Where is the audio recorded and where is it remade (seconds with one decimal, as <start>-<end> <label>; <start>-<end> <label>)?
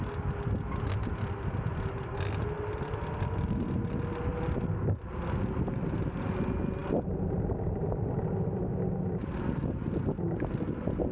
0.0-4.3 recorded; 4.3-5.1 remade; 5.1-6.8 recorded; 6.8-8.7 remade; 8.7-11.1 recorded